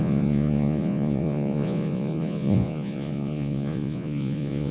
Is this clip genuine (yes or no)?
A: no